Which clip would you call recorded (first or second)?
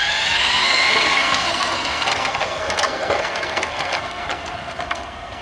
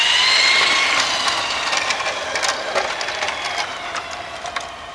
second